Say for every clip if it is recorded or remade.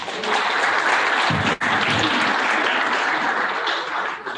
recorded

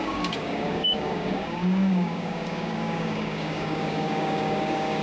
remade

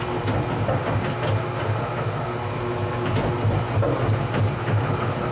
recorded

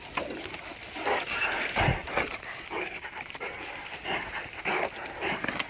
recorded